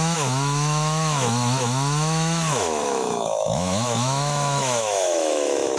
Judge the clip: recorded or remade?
remade